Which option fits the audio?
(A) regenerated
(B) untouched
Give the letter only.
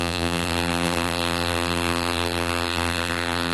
A